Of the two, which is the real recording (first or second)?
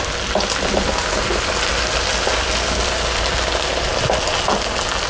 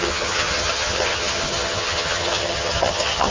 first